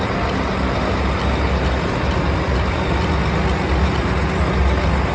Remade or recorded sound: recorded